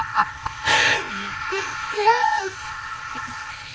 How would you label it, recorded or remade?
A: remade